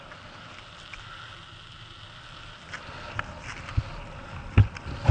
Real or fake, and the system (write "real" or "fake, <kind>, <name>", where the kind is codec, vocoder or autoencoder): real